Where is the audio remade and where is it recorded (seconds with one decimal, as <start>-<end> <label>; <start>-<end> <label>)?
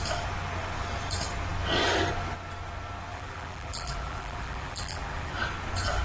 0.0-3.1 recorded; 3.1-5.3 remade; 5.3-6.0 recorded